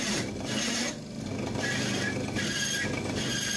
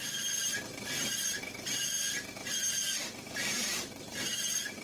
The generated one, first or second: second